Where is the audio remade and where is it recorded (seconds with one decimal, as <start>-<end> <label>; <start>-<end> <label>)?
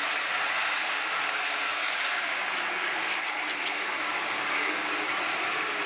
0.0-0.6 recorded; 0.6-3.2 remade; 3.2-3.6 recorded; 3.6-4.9 remade; 4.9-5.9 recorded